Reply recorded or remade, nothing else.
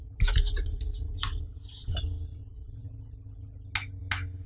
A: recorded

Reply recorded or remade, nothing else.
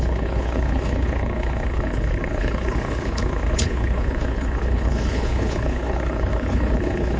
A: remade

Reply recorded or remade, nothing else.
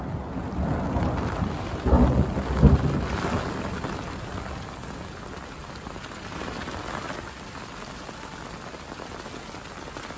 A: recorded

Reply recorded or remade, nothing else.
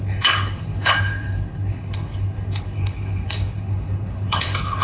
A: remade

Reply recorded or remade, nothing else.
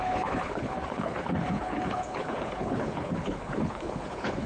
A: remade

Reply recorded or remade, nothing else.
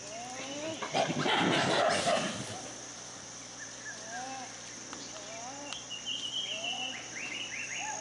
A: recorded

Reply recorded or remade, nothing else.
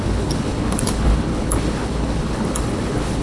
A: remade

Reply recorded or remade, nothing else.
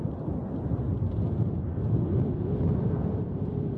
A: recorded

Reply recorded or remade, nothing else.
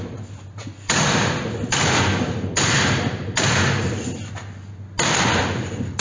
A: recorded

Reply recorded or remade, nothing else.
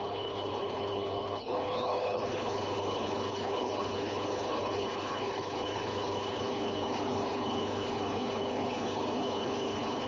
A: remade